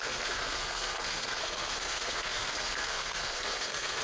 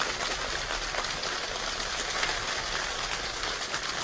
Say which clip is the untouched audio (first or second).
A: second